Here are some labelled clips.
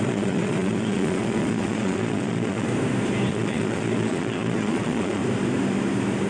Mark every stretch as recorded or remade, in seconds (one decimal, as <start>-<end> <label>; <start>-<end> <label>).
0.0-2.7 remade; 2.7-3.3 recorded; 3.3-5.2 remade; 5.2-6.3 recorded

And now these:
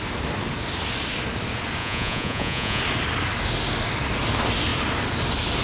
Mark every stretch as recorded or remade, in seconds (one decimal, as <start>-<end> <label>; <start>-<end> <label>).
0.0-1.8 recorded; 1.8-2.8 remade; 2.8-5.6 recorded

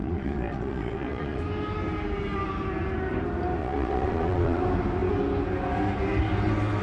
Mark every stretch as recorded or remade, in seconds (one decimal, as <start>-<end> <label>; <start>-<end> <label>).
0.0-1.4 remade; 1.4-3.6 recorded; 3.6-4.6 remade; 4.6-6.8 recorded

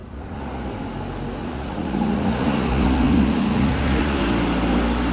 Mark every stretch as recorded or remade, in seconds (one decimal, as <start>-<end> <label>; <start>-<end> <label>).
0.0-0.7 remade; 0.7-1.4 recorded; 1.4-4.2 remade; 4.2-5.1 recorded